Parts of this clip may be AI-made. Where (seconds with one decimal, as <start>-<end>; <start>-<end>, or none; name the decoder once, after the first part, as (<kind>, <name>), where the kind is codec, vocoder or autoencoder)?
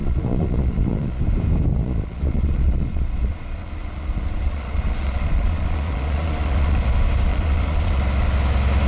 0.0-1.2 (vocoder, Vocos); 1.7-6.8; 7.3-8.0